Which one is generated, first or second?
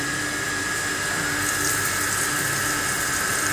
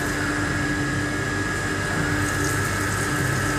first